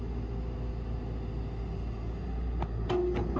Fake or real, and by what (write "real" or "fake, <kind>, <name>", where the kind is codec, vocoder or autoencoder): real